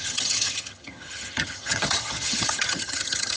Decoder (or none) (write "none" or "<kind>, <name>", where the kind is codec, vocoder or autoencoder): vocoder, HiFi-GAN